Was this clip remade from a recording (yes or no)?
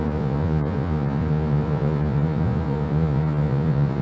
yes